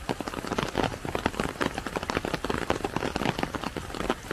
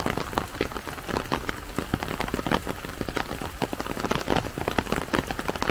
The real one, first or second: second